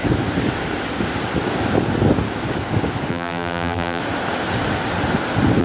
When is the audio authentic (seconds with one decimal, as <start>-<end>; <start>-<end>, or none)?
0.0-3.1; 4.0-5.6